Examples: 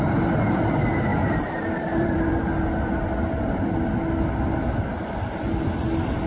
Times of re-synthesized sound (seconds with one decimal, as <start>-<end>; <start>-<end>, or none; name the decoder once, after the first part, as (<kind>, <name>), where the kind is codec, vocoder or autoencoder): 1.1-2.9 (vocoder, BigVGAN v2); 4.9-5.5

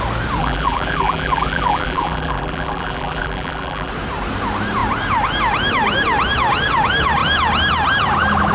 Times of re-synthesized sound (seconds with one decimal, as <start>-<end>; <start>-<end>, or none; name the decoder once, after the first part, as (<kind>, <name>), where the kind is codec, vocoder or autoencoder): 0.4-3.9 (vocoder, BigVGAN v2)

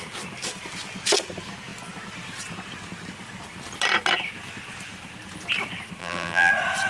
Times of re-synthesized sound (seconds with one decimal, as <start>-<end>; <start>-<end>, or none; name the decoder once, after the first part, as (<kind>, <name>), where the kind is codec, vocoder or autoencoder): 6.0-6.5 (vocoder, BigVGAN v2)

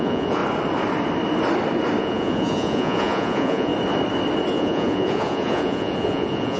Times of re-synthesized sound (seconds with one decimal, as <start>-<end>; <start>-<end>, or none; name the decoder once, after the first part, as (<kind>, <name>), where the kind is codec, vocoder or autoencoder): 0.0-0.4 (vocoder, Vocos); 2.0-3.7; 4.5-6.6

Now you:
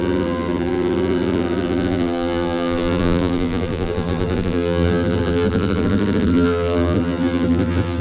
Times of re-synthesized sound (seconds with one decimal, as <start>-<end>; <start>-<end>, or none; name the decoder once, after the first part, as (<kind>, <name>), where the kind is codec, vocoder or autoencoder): 0.0-8.0 (vocoder, BigVGAN v2)